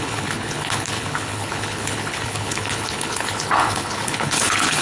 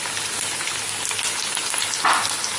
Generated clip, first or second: first